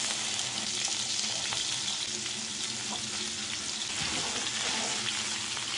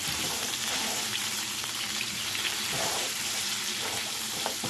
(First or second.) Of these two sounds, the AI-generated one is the second